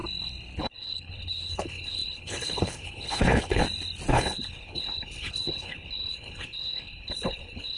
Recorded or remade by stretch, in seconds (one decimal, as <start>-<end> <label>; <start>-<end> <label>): 0.0-0.6 recorded; 0.6-3.6 remade; 3.6-4.1 recorded; 4.1-7.8 remade